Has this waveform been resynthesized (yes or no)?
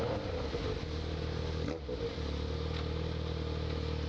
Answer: no